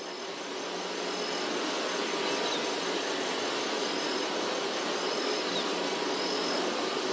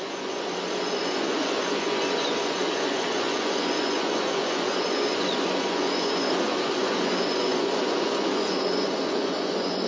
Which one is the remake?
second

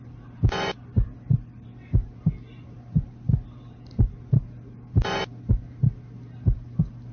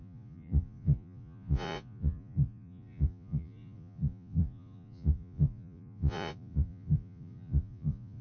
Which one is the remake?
second